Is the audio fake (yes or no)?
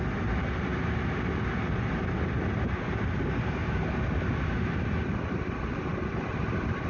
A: no